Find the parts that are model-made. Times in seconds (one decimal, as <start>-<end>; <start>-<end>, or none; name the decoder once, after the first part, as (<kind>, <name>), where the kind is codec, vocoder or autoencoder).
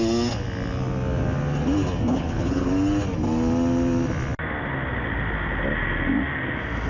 2.1-2.7 (codec, HILCodec)